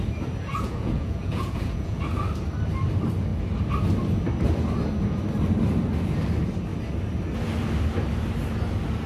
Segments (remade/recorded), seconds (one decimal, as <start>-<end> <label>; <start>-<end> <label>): 0.0-0.5 recorded; 0.5-2.0 remade; 2.0-9.1 recorded